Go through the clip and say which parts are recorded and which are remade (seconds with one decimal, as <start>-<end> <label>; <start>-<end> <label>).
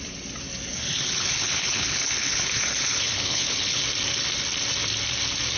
0.0-0.7 recorded; 0.7-3.8 remade; 3.8-5.6 recorded